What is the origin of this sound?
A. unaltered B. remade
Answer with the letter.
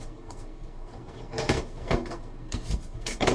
B